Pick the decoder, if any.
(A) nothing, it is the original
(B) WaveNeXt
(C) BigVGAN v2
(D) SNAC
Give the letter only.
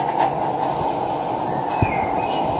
A